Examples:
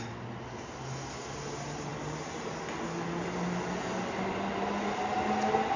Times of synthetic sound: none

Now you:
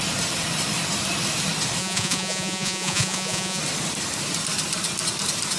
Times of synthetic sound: 1.8-3.6 (vocoder, Vocos)